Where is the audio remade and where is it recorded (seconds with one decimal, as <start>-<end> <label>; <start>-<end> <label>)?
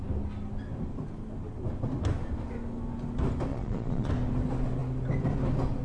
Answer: 0.0-3.5 recorded; 3.5-4.1 remade; 4.1-5.8 recorded